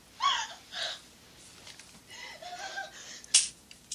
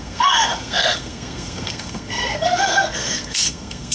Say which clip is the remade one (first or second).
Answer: second